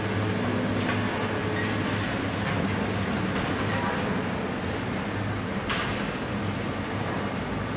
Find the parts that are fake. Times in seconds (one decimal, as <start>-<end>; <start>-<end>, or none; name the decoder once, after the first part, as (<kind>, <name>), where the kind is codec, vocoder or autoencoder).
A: none